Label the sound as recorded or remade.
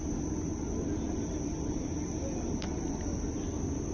remade